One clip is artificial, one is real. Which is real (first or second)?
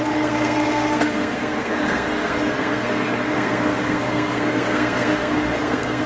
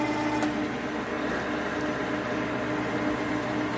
second